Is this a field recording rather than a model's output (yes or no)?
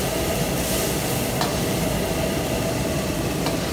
yes